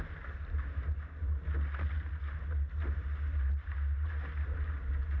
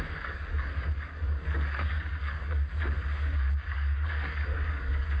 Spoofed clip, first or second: second